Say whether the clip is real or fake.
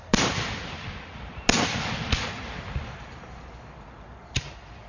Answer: real